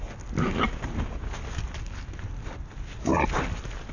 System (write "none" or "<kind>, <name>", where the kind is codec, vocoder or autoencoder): none